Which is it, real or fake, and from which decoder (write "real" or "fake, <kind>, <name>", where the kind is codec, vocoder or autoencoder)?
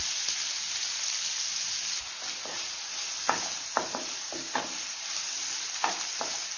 real